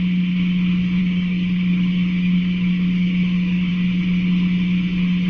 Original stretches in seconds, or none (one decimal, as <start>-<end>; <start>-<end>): 0.0-1.0; 3.7-5.3